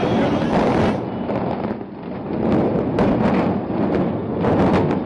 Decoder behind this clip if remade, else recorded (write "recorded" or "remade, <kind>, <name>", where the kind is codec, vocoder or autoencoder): recorded